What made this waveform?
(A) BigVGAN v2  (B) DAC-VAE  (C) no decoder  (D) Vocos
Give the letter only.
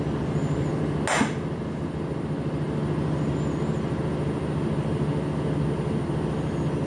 C